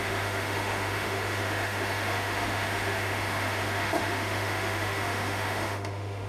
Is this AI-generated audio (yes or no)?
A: yes